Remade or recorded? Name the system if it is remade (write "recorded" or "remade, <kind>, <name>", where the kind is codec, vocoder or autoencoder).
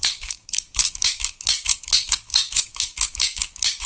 remade, codec, DAC